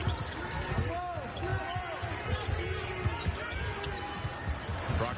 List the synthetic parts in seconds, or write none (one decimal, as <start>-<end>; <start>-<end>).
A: none